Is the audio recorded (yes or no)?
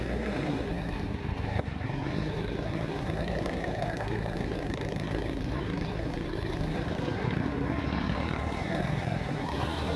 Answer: no